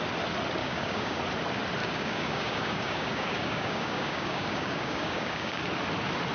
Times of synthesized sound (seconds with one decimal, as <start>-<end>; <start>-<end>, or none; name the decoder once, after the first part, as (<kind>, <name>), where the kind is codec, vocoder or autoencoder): 0.6-1.2 (codec, DAC); 1.8-5.6